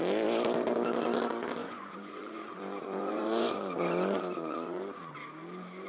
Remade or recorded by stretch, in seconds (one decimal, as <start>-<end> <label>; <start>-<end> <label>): 0.0-1.6 recorded; 1.6-5.1 remade; 5.1-5.9 recorded